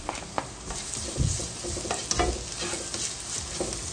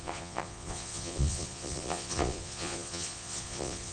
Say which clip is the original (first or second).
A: first